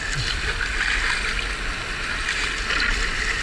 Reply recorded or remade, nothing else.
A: recorded